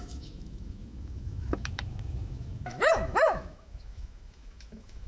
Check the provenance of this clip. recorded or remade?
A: remade